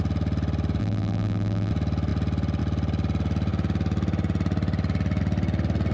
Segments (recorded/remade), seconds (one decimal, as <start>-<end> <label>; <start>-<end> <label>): 0.0-0.8 recorded; 0.8-1.7 remade; 1.7-5.9 recorded